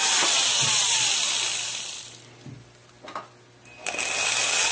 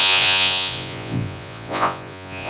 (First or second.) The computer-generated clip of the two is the second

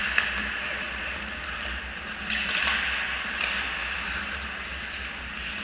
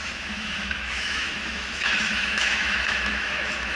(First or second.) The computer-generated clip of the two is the second